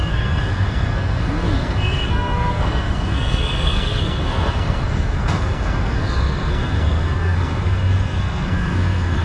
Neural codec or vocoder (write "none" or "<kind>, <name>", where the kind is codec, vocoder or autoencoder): codec, SNAC